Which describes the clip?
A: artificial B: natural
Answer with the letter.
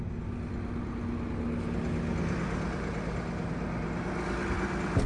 B